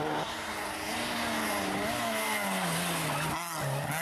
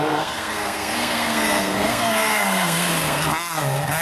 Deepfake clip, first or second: second